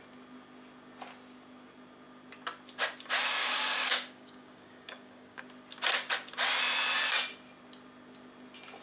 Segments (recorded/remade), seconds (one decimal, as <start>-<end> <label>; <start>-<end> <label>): 0.0-3.4 recorded; 3.4-5.4 remade; 5.4-8.8 recorded